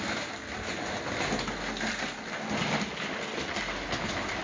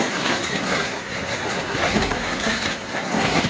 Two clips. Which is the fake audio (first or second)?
second